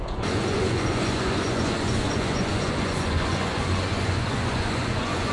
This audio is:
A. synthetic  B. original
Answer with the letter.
A